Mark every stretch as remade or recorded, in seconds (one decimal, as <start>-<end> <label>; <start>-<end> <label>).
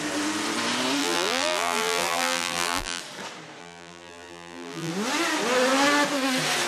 0.0-1.0 recorded; 1.0-3.0 remade; 3.0-3.6 recorded; 3.6-4.9 remade; 4.9-6.7 recorded